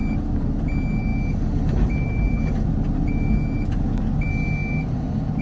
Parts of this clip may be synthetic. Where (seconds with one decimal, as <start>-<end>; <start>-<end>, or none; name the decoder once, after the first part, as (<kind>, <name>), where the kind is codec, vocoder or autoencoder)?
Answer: none